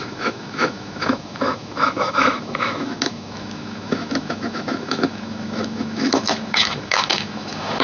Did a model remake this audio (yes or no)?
yes